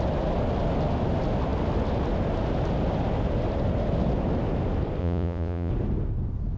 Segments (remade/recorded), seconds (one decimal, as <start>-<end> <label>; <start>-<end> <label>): 0.0-5.0 recorded; 5.0-5.7 remade; 5.7-6.6 recorded